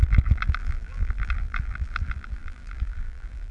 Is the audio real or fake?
fake